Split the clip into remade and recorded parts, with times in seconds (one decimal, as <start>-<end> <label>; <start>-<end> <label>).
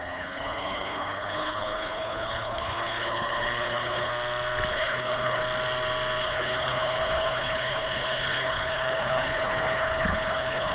0.0-4.1 remade; 4.1-4.7 recorded; 4.7-5.4 remade; 5.4-6.2 recorded; 6.2-10.7 remade